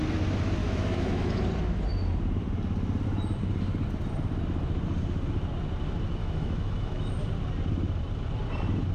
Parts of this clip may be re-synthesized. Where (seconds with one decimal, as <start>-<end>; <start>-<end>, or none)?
0.6-1.3; 6.2-7.1